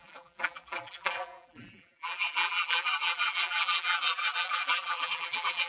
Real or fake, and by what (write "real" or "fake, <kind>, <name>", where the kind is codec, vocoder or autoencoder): fake, vocoder, BigVGAN v2